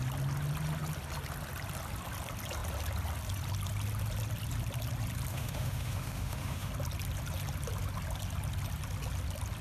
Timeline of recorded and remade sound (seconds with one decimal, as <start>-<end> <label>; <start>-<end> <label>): 0.0-5.3 recorded; 5.3-6.7 remade; 6.7-9.6 recorded